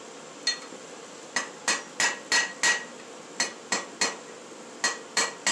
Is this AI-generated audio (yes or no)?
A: no